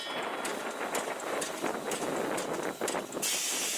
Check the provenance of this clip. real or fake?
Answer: real